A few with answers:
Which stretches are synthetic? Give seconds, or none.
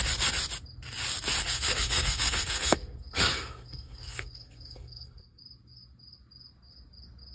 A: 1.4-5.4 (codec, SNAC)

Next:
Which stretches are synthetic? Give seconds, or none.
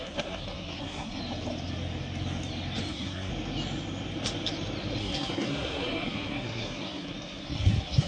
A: 0.0-1.2 (codec, SNAC); 2.9-3.3; 5.0-8.1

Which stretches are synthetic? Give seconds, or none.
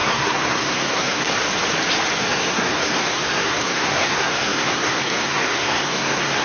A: 0.0-1.4 (codec, SNAC); 2.2-6.4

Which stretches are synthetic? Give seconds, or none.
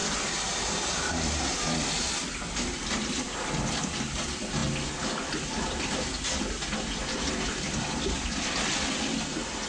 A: none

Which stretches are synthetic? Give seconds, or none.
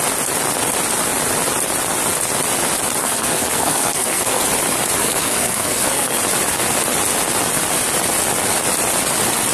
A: 3.0-4.4 (codec, SNAC); 5.0-6.2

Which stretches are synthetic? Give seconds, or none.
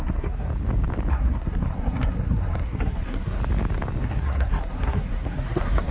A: 0.0-0.5 (codec, SNAC); 1.1-3.4; 4.0-5.9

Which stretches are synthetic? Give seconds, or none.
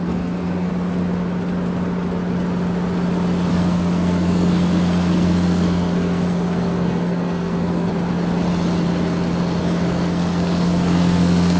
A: 0.0-0.7 (codec, SNAC); 3.5-7.9; 9.6-11.6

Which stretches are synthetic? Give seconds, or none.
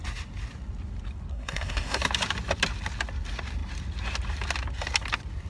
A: 1.3-2.0 (codec, SNAC)